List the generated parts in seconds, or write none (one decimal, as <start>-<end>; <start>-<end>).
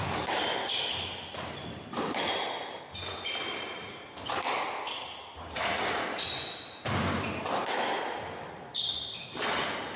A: none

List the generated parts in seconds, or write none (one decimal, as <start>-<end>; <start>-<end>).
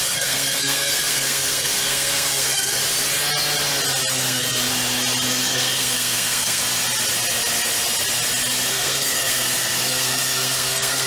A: 0.0-2.8; 4.1-4.7; 5.3-6.6; 8.7-11.1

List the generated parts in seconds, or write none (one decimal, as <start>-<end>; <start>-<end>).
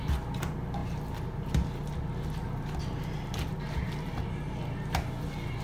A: none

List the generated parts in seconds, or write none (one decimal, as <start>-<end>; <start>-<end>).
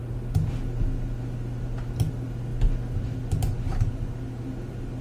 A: none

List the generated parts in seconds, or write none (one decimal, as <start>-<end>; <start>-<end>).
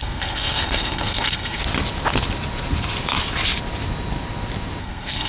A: 0.0-1.6; 4.8-5.3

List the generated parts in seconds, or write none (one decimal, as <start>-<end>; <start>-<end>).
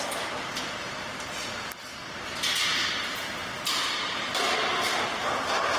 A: none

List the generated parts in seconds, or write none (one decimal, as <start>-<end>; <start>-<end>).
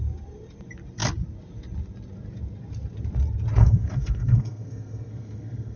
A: 3.6-5.8